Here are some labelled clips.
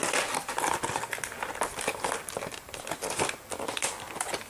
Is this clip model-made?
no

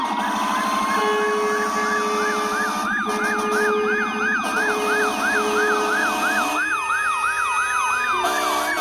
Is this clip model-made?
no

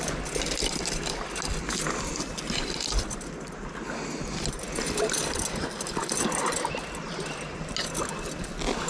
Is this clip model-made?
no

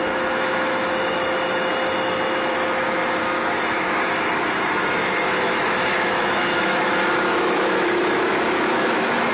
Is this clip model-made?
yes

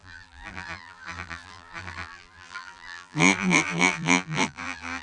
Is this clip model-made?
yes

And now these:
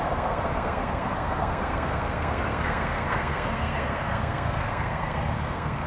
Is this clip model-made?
yes